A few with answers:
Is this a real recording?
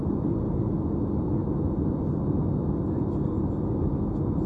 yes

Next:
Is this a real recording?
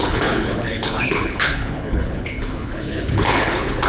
no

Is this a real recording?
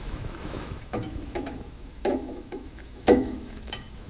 no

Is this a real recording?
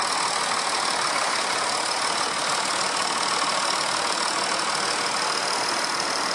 yes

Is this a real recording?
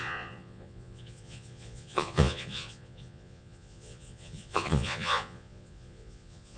no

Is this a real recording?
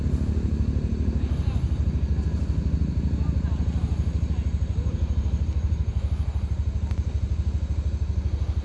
yes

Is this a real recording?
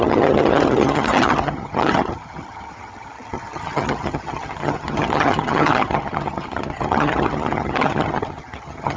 no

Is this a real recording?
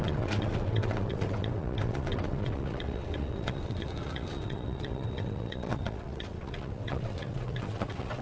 no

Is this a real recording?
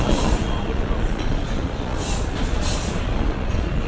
no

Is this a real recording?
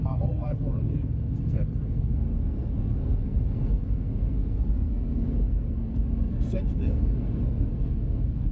no